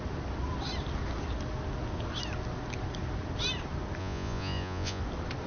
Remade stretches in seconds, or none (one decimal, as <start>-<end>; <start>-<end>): 4.0-5.0